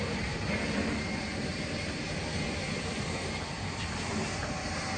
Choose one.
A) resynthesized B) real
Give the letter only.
A